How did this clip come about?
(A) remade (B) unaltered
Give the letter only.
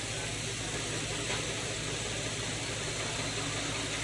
B